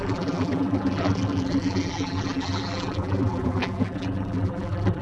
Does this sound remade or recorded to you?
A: remade